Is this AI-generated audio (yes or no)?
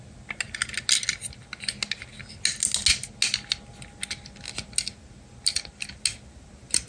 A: no